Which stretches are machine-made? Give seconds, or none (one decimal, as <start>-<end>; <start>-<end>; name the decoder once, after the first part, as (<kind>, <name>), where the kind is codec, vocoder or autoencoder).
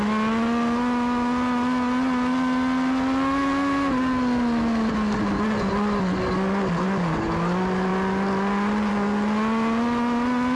none